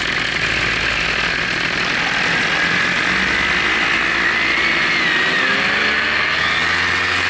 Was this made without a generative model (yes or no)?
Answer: yes